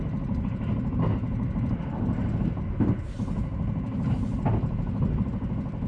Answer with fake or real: real